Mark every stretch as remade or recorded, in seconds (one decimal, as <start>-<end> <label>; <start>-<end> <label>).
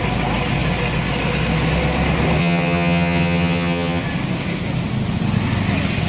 0.0-2.4 recorded; 2.4-4.0 remade; 4.0-6.1 recorded